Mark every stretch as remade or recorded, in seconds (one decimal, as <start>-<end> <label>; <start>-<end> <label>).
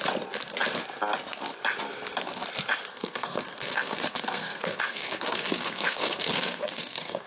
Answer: 0.0-2.9 recorded; 2.9-7.3 remade